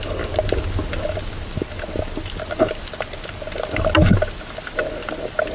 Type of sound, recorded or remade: recorded